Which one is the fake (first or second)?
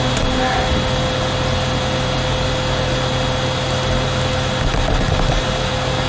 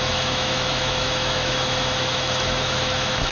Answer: second